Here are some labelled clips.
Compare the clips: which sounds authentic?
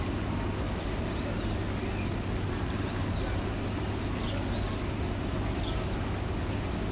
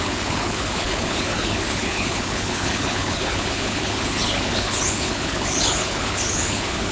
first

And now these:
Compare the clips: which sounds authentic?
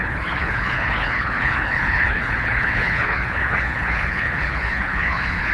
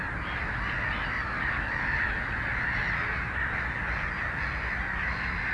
second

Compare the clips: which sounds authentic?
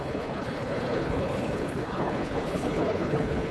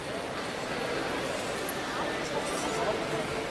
second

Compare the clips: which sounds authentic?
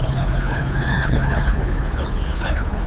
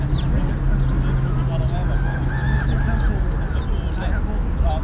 second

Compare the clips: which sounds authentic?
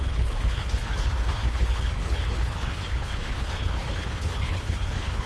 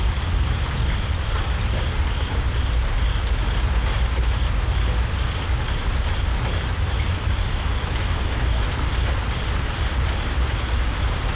second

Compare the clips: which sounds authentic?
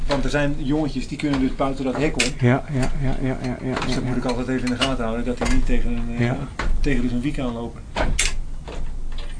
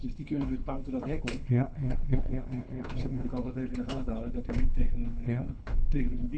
first